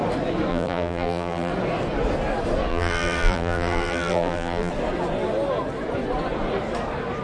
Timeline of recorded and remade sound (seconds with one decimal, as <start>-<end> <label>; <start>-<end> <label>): 0.0-0.5 recorded; 0.5-1.5 remade; 1.5-2.7 recorded; 2.7-4.7 remade; 4.7-7.2 recorded